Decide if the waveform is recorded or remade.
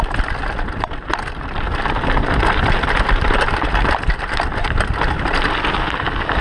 recorded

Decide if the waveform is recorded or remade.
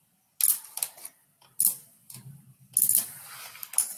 recorded